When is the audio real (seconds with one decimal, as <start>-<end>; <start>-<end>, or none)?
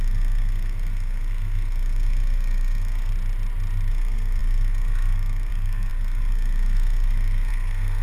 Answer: 3.1-3.9